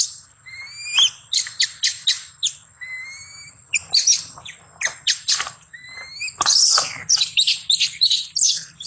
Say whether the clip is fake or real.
real